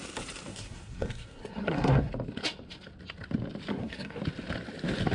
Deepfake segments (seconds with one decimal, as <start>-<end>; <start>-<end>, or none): 0.5-2.1; 3.7-4.2